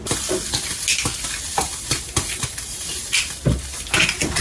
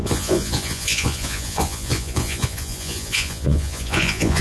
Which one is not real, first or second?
second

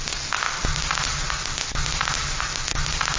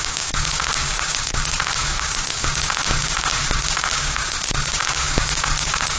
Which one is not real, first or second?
second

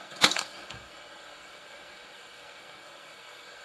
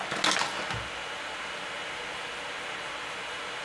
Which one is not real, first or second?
first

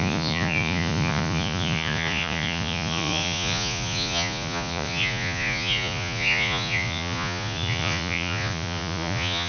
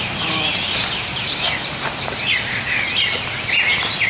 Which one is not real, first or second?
first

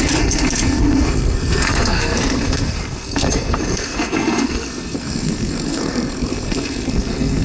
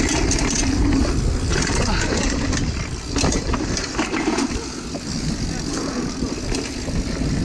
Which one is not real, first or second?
first